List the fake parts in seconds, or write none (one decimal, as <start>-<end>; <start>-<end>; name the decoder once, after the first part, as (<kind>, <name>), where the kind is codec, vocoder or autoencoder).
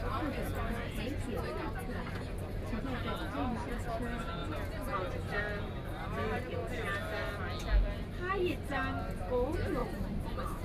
none